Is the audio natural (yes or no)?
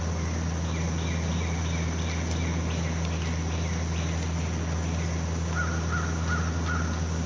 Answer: yes